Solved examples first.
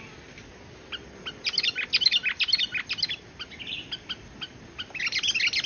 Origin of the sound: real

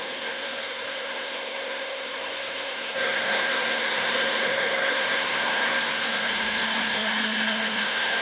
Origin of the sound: fake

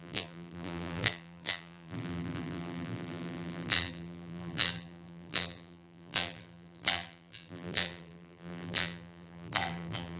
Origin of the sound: fake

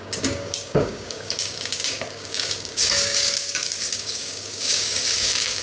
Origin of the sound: fake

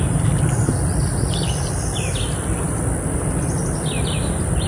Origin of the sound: real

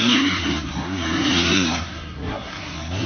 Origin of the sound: fake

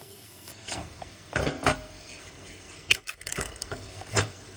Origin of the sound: fake